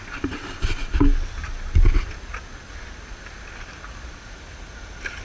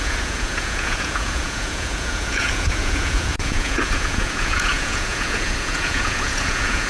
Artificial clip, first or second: second